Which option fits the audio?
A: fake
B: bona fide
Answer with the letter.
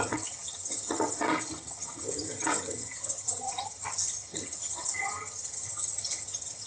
A